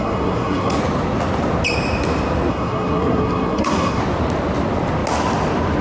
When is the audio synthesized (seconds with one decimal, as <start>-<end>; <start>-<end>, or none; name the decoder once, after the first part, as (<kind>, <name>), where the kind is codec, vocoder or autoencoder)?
0.0-0.8 (codec, SNAC); 2.5-4.0